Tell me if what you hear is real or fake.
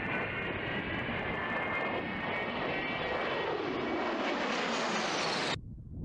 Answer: real